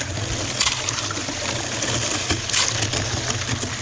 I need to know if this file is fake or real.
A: real